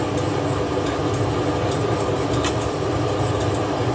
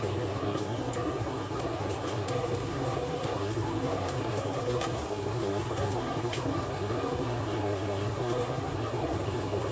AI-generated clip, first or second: second